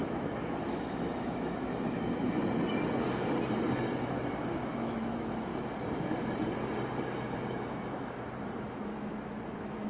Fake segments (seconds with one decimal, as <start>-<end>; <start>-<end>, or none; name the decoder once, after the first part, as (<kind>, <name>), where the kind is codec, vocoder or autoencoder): 0.0-2.4 (autoencoder, DAC-VAE); 4.7-5.5; 8.6-9.9